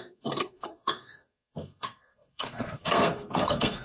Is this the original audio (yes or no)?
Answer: no